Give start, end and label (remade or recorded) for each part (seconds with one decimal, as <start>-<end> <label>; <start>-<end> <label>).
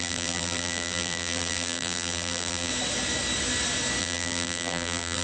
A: 0.0-2.7 remade; 2.7-4.0 recorded; 4.0-5.2 remade